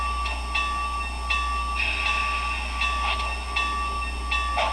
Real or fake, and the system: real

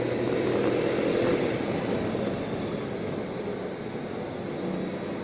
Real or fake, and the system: real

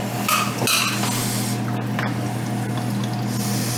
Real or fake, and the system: real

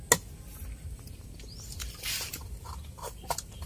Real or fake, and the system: real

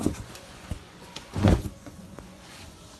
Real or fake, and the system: fake, vocoder, Vocos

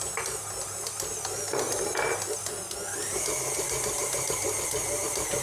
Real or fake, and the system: real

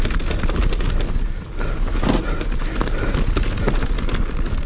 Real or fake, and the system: real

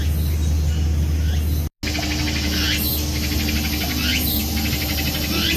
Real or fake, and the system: real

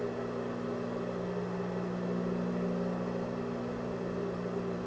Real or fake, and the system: real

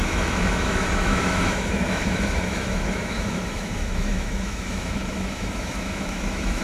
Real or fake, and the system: fake, autoencoder, DAC-VAE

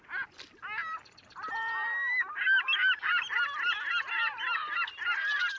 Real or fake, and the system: real